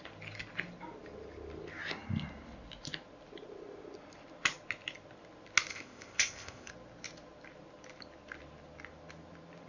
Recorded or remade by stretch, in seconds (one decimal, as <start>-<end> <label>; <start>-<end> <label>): 0.0-5.7 recorded; 5.7-6.7 remade; 6.7-9.7 recorded